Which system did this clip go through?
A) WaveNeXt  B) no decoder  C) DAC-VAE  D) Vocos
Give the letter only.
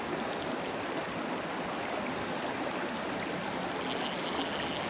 B